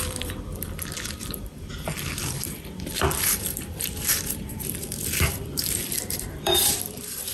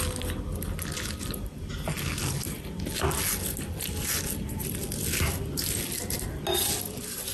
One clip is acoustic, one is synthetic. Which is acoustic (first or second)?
second